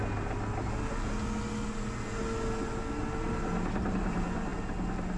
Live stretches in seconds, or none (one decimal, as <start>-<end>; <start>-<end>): 0.0-5.2